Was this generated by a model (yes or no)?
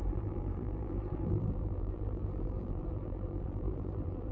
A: yes